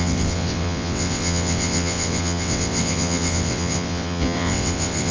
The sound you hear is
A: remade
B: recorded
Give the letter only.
A